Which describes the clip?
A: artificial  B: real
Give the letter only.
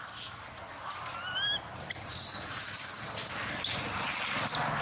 B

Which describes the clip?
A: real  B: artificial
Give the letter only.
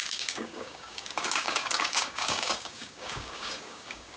B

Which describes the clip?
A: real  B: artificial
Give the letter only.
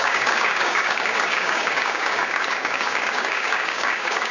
B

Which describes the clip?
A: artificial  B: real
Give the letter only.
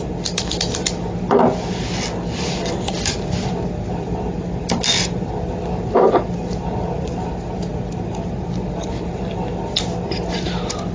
B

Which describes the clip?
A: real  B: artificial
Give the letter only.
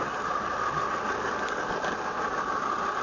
A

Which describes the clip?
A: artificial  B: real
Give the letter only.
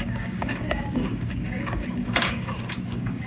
A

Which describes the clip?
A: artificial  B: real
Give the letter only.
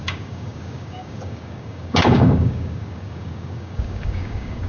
A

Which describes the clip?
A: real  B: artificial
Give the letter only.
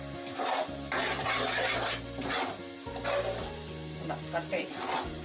A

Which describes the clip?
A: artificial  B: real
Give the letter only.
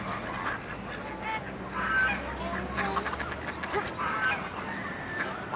B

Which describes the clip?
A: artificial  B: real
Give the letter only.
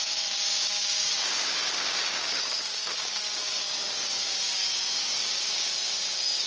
A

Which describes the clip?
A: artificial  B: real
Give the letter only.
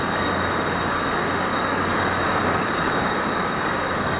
A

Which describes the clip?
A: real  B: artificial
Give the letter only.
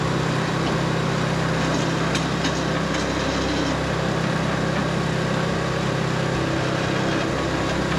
A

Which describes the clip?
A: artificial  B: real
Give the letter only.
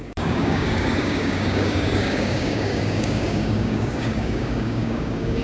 A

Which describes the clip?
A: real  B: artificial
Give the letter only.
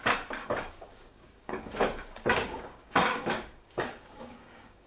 B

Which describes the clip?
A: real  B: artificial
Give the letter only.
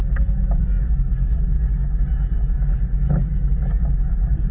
A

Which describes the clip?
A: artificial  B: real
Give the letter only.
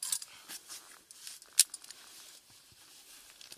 B